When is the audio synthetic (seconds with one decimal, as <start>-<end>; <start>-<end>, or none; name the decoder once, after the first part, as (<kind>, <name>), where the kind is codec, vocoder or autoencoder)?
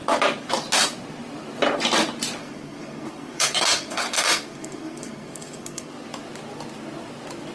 2.4-5.9 (codec, SNAC)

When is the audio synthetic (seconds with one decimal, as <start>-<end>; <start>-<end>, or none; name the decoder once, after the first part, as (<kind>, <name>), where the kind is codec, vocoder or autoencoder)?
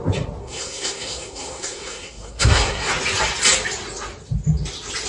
0.4-2.9 (codec, SNAC)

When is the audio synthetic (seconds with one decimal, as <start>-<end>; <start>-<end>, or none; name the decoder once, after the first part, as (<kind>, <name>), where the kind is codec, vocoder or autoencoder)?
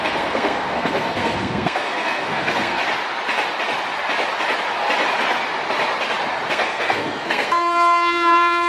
0.0-2.8 (codec, SNAC); 6.5-8.7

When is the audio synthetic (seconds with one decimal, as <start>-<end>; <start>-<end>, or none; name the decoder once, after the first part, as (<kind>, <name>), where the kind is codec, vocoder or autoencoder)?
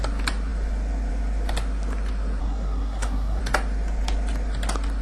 2.4-3.4 (codec, SNAC)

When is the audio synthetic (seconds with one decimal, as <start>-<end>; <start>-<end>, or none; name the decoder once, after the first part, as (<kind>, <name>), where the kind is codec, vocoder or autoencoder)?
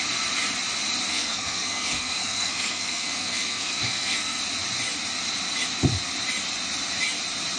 1.1-4.4 (codec, SNAC)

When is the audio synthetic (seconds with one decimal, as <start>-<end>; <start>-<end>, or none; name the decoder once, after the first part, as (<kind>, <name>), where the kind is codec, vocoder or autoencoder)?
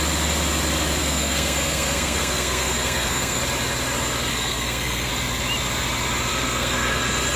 1.0-3.4 (codec, SNAC); 4.3-5.1; 6.3-7.0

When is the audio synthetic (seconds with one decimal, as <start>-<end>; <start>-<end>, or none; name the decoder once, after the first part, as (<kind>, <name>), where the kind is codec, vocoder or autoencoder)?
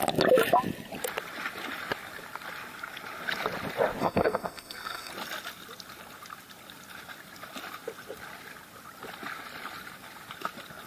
4.0-5.1 (codec, SNAC)